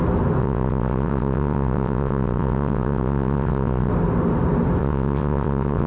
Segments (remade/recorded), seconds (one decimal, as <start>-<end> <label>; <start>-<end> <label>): 0.0-0.4 recorded; 0.4-3.9 remade; 3.9-4.8 recorded; 4.8-5.9 remade